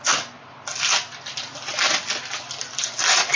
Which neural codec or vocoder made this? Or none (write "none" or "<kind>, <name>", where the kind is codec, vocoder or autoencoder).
none